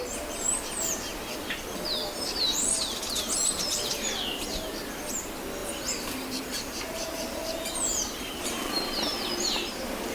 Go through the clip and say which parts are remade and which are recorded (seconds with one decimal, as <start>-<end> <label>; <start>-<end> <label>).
0.0-5.6 recorded; 5.6-9.3 remade; 9.3-10.1 recorded